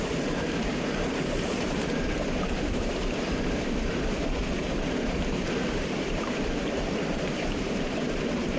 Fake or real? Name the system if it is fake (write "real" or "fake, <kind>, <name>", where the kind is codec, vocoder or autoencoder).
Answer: fake, vocoder, BigVGAN v2